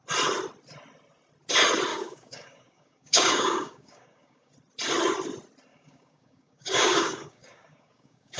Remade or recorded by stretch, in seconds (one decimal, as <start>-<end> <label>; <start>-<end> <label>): 0.0-1.9 recorded; 1.9-4.5 remade; 4.5-5.7 recorded; 5.7-8.4 remade